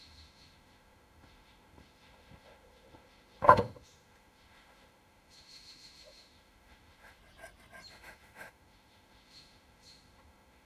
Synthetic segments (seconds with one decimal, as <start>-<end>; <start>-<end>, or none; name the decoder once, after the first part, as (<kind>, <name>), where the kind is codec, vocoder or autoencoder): 0.0-7.2 (autoencoder, DAC-VAE); 7.9-10.7